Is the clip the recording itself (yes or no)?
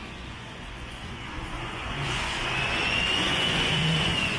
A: no